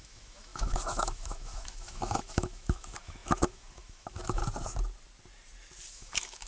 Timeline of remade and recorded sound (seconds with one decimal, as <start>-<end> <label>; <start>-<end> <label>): 0.0-4.4 remade; 4.4-5.9 recorded; 5.9-6.5 remade